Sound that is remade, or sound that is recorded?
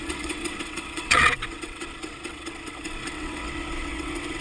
remade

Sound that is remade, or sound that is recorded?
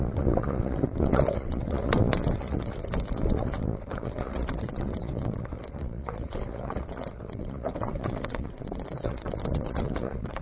remade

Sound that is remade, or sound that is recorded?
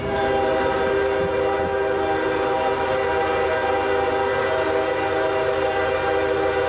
recorded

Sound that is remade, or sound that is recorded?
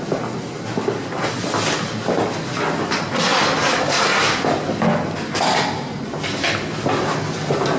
recorded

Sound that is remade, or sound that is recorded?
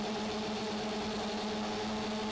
recorded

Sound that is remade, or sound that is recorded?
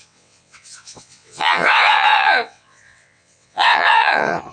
remade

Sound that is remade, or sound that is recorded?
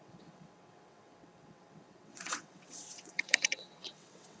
remade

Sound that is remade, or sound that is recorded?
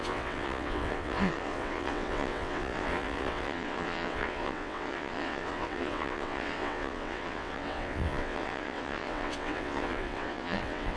remade